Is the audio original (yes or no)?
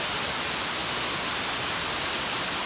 yes